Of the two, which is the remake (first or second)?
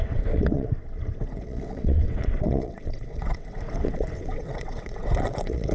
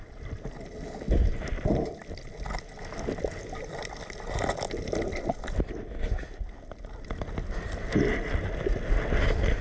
first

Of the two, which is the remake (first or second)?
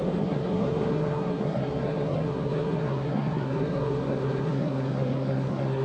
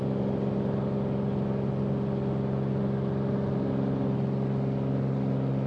first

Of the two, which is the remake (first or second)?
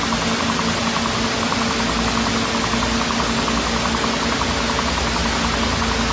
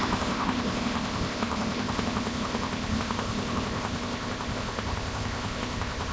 second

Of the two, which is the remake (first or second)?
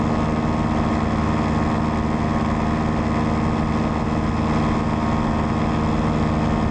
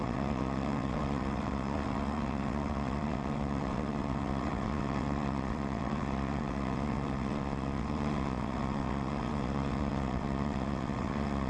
second